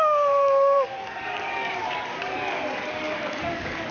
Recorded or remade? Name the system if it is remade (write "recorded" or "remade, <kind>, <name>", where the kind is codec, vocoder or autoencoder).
remade, codec, DAC